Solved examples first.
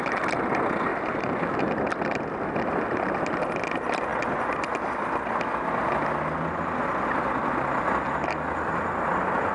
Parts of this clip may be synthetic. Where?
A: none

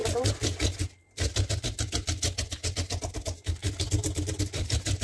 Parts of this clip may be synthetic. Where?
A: none

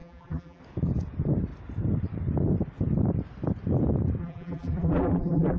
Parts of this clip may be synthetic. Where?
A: 0.0-0.6 (vocoder, BigVGAN v2); 4.2-5.6

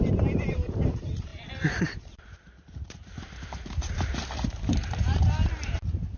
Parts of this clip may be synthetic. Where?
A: 0.0-6.2 (vocoder, BigVGAN v2)

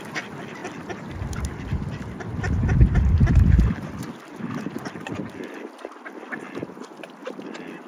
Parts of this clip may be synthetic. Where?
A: 0.6-4.2 (vocoder, BigVGAN v2)

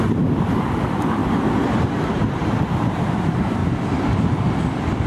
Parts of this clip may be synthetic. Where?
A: 0.0-3.6 (vocoder, BigVGAN v2)

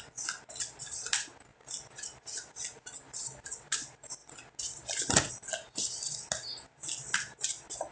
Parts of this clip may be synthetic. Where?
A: none

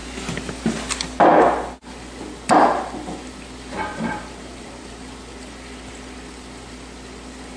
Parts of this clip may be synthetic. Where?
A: 3.9-4.9 (vocoder, BigVGAN v2)